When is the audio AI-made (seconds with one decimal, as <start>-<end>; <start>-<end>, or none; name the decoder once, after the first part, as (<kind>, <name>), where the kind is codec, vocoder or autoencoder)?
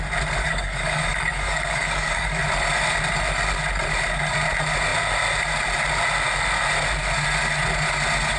0.4-2.4 (codec, DAC)